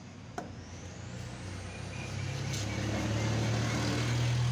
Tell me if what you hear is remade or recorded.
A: recorded